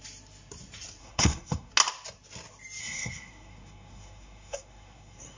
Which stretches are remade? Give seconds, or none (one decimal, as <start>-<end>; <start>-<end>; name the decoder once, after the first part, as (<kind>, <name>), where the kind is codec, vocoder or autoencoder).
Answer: 1.0-1.7 (codec, SNAC); 2.8-5.4